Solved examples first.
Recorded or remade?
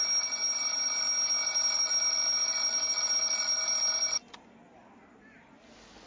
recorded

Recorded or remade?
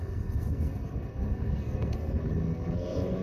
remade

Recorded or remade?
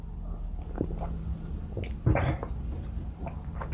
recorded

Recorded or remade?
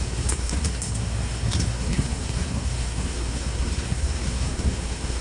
remade